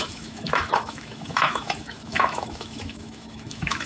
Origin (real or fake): fake